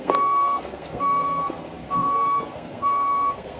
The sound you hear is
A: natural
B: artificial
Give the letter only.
B